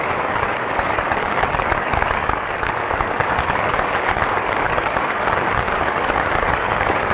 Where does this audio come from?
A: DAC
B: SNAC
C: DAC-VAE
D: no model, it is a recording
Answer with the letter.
A